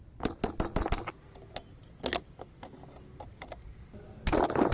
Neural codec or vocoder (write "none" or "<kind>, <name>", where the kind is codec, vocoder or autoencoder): none